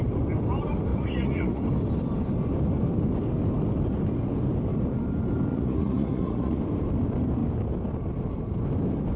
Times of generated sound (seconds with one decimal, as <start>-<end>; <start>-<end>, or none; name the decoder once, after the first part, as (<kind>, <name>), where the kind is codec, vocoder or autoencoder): 0.9-1.6 (vocoder, Vocos); 5.5-6.6